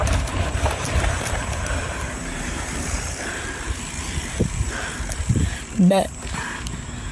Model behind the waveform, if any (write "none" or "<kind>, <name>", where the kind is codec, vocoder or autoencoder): vocoder, BigVGAN v2